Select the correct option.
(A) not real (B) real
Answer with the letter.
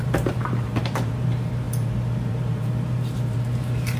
A